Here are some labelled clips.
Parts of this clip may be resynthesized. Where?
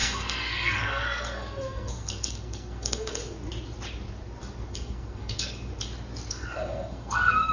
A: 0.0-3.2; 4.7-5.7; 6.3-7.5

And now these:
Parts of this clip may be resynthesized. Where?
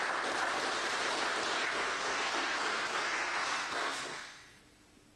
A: 1.7-4.6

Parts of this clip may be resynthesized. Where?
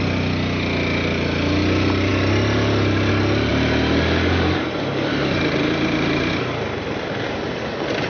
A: 3.5-6.3